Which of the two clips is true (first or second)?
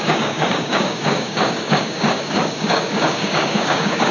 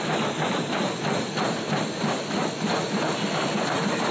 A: second